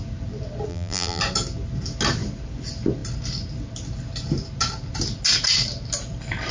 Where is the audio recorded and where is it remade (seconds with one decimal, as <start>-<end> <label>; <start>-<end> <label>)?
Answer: 0.0-0.7 recorded; 0.7-1.2 remade; 1.2-6.5 recorded